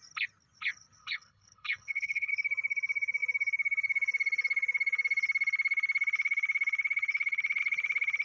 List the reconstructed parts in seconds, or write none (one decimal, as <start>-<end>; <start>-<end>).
1.0-2.3